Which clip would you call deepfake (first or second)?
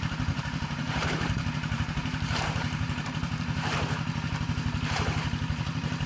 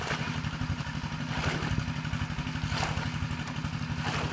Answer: first